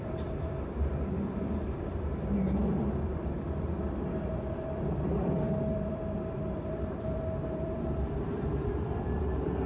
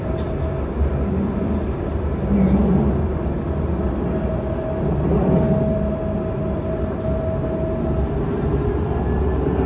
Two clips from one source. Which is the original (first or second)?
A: second